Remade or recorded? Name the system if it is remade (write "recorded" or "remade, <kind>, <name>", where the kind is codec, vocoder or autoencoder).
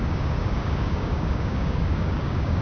remade, codec, DAC